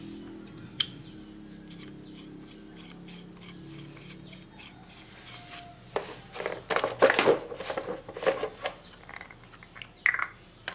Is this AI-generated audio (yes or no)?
no